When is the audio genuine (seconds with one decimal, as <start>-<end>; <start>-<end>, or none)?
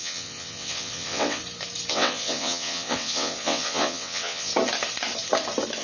1.4-1.9; 4.5-5.8